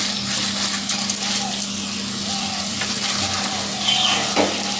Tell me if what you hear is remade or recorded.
recorded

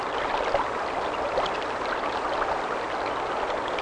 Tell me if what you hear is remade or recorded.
recorded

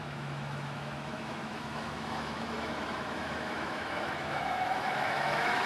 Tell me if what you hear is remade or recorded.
remade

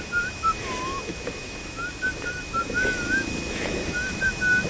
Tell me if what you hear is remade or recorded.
remade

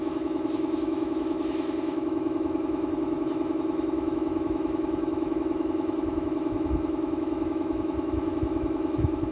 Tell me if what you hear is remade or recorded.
remade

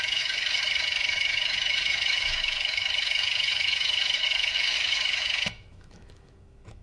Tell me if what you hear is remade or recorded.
remade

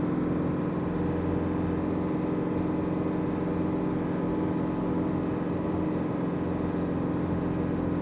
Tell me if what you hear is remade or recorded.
recorded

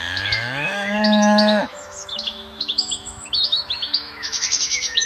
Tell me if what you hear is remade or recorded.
remade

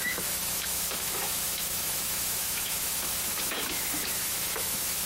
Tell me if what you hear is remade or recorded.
remade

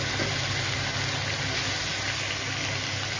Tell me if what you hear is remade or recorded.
recorded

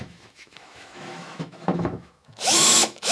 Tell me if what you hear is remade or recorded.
remade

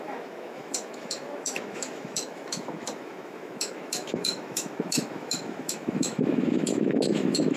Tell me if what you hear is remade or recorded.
remade